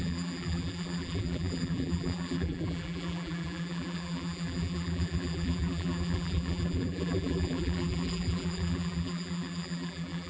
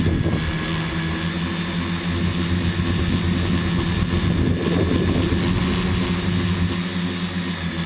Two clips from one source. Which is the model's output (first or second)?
first